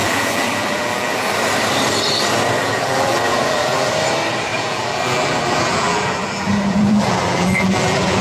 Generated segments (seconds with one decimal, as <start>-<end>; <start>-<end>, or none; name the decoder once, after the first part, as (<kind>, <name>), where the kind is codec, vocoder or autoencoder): 0.0-1.3 (vocoder, BigVGAN v2); 2.6-3.9; 4.5-8.2